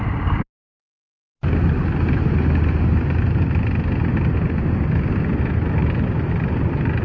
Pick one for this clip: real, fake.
real